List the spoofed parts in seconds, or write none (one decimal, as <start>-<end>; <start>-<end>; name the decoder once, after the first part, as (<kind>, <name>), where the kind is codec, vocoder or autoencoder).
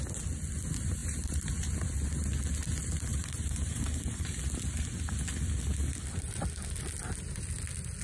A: 1.0-1.5 (vocoder, BigVGAN v2); 3.1-4.3